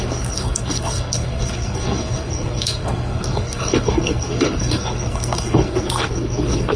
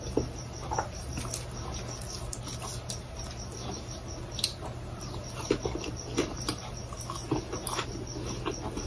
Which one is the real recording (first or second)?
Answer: second